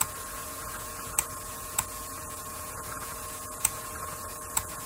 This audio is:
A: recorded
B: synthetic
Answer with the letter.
B